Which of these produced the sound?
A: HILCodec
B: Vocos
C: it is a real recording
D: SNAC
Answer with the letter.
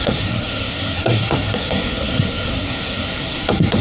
D